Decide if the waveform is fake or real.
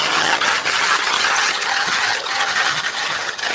fake